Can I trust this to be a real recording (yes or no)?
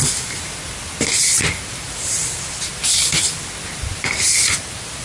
yes